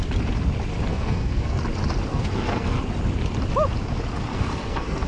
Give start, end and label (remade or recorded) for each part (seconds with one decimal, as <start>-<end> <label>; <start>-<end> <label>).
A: 0.0-0.9 recorded; 0.9-1.6 remade; 1.6-2.1 recorded; 2.1-2.8 remade; 2.8-4.3 recorded; 4.3-5.1 remade